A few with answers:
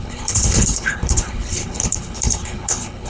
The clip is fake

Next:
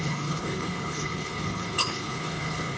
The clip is fake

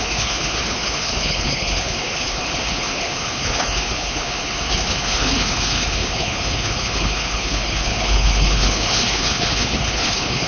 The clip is fake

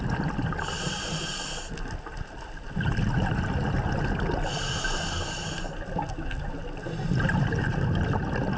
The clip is real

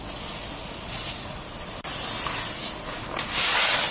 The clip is real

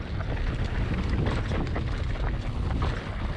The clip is real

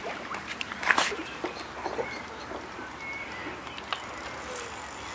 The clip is real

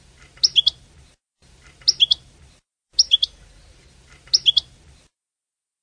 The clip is real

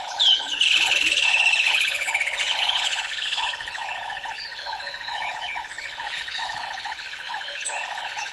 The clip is fake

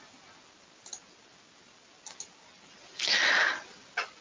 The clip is real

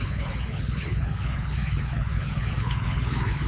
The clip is fake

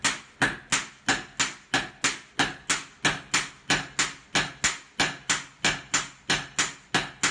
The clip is real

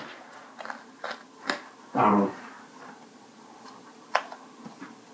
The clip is real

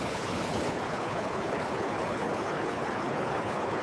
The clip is fake